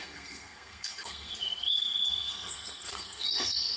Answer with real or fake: fake